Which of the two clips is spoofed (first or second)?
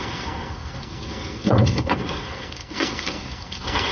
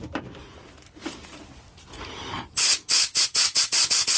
first